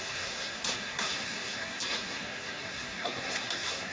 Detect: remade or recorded remade